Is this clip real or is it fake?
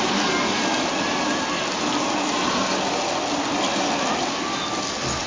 real